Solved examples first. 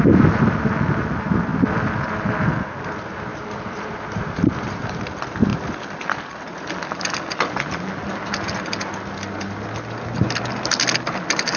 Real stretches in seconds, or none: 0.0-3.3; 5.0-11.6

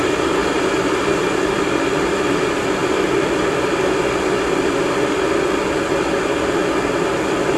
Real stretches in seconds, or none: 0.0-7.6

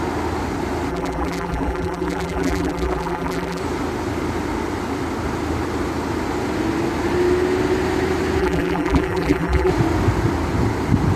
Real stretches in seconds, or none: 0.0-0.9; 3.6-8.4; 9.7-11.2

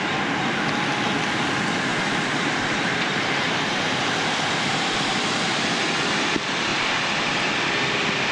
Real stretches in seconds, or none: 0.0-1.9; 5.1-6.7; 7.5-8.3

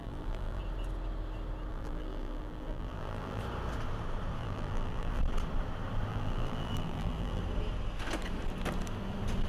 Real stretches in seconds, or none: 0.6-1.7; 3.4-4.4; 5.2-6.1; 7.4-9.5

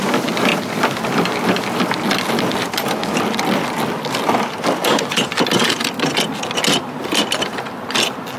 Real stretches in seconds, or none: 0.5-2.2; 3.0-4.0; 6.1-7.1

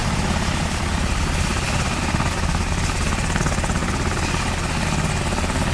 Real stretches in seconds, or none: 3.4-5.7